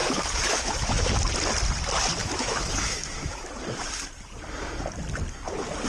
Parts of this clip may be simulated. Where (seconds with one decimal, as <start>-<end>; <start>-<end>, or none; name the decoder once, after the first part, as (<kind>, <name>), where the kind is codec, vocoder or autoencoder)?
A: 0.0-1.1 (autoencoder, DAC-VAE); 2.2-3.5